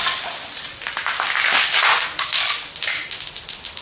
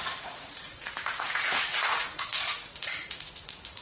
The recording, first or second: first